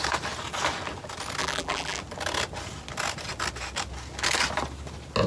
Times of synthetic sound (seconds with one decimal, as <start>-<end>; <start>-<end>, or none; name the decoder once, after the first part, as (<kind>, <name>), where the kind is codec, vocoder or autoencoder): 1.4-2.0 (vocoder, BigVGAN v2)